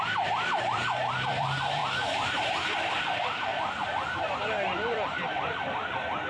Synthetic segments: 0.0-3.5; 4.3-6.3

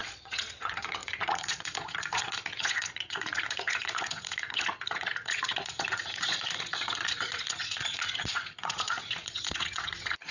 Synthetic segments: 0.0-10.3

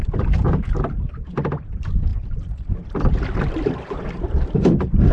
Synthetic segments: none

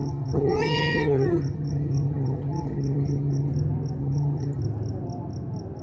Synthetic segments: 0.0-3.5; 4.0-4.6